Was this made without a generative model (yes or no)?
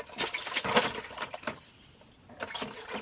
yes